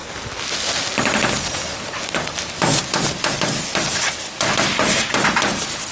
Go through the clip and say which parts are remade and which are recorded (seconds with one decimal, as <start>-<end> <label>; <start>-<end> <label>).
0.0-5.9 recorded